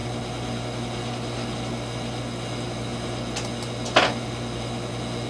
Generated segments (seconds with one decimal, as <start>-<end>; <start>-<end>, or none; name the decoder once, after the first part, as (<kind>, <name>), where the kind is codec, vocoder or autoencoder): none